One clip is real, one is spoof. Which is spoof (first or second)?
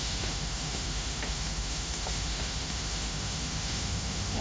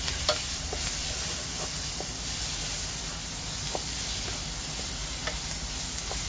first